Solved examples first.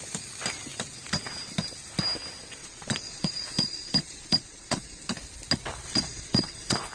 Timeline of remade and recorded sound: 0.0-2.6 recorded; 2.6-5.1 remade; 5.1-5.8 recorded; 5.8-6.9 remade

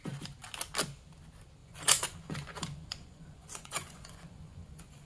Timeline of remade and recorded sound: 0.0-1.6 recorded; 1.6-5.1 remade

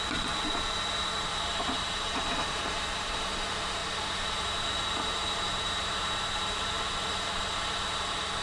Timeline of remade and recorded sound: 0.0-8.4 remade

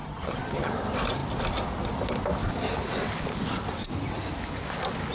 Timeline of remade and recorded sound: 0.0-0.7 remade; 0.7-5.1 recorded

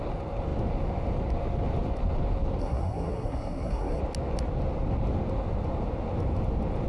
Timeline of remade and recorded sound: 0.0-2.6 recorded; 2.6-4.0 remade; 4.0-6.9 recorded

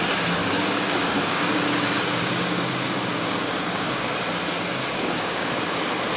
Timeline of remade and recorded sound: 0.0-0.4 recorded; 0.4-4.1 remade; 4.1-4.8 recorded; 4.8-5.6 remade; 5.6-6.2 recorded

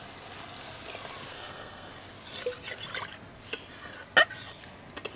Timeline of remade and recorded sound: 0.0-1.3 recorded; 1.3-1.9 remade; 1.9-5.2 recorded

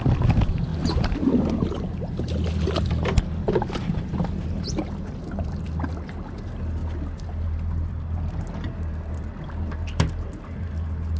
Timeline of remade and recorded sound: 0.0-11.2 recorded